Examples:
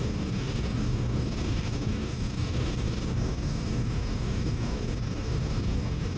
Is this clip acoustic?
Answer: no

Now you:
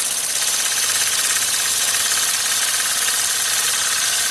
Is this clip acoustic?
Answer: yes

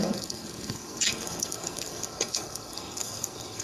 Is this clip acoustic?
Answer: no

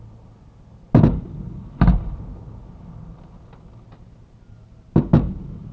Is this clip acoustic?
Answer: yes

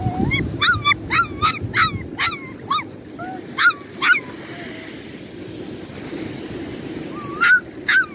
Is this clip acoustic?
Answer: yes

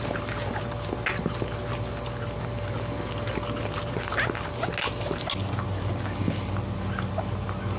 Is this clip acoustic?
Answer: yes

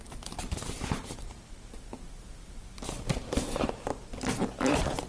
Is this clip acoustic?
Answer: yes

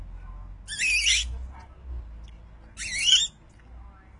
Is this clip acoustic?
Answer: yes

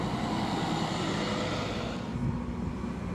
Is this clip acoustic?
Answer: yes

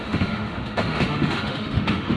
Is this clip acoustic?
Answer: no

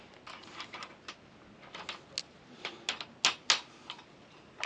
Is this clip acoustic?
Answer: yes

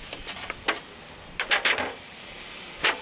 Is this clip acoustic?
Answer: yes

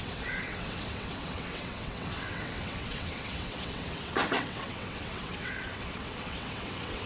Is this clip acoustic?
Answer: no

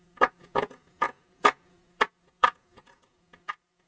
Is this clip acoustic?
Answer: no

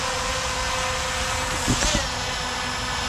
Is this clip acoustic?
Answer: yes